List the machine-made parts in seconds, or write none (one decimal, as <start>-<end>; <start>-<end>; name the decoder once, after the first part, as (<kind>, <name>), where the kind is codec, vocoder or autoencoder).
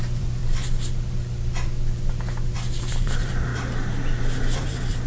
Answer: 0.0-0.4 (vocoder, BigVGAN v2); 2.8-3.5; 4.2-5.1